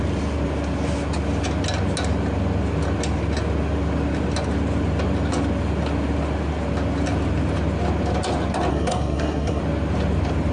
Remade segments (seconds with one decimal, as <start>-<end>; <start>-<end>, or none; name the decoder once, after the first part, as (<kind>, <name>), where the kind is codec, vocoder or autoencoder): 8.7-9.6 (codec, SNAC)